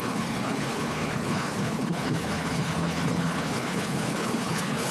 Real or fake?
fake